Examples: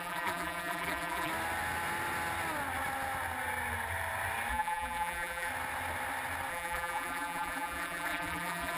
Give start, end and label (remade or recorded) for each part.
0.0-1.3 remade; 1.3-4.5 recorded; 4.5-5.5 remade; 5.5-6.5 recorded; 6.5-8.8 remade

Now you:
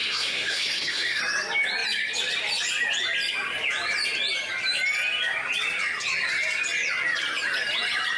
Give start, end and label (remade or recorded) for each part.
0.0-1.2 remade; 1.2-8.2 recorded

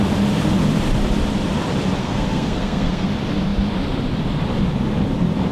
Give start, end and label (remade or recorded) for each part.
0.0-2.0 recorded; 2.0-3.1 remade; 3.1-5.5 recorded

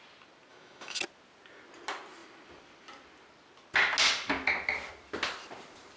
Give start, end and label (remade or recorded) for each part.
0.0-0.5 recorded; 0.5-1.0 remade; 1.0-6.0 recorded

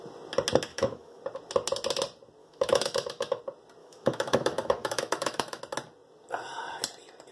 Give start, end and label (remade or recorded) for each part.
0.0-0.7 recorded; 0.7-1.2 remade; 1.2-2.4 recorded; 2.4-3.4 remade; 3.4-3.8 recorded; 3.8-5.6 remade; 5.6-7.3 recorded

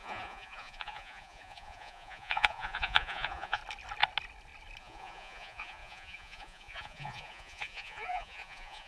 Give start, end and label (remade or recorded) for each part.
0.0-3.6 remade; 3.6-4.8 recorded; 4.8-8.9 remade

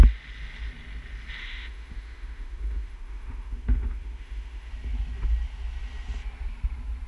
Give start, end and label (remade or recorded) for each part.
0.0-1.4 recorded; 1.4-4.7 remade; 4.7-7.1 recorded